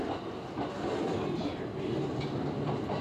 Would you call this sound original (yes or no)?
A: yes